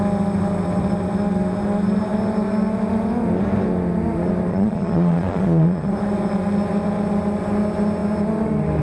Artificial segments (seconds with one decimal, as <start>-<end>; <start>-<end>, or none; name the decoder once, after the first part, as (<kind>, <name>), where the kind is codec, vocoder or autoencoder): 4.5-5.9 (vocoder, Vocos)